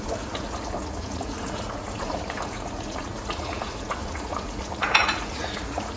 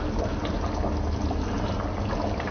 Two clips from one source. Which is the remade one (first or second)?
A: first